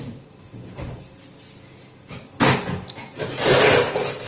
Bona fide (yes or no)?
yes